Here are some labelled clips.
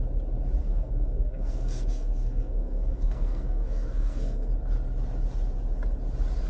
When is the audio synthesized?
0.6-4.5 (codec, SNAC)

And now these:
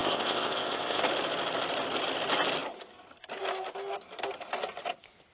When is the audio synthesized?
0.0-1.0 (codec, ZipCodec)